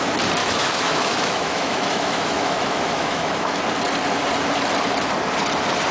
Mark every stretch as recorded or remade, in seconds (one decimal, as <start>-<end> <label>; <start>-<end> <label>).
0.0-0.4 recorded; 0.4-3.6 remade; 3.6-5.9 recorded